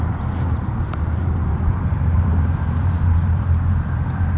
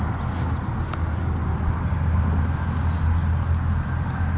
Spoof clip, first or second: first